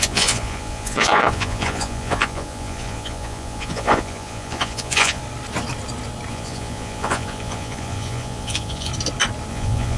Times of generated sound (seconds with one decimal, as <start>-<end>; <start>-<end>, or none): 0.0-5.2; 6.3-8.9; 9.5-10.0